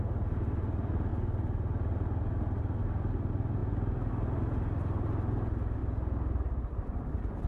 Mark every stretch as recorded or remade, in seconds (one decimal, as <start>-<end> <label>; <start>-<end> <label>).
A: 0.0-7.5 recorded